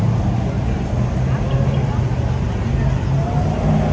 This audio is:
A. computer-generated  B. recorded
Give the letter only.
B